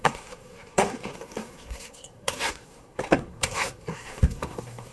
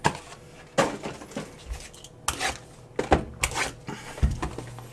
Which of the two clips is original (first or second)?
second